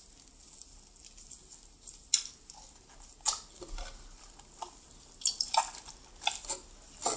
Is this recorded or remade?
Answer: recorded